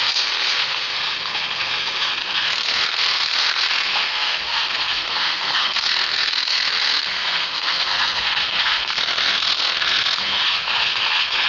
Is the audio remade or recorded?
remade